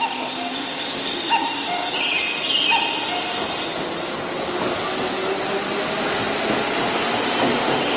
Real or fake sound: real